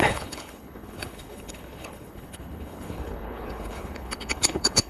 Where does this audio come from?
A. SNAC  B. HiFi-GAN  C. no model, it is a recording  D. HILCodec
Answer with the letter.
D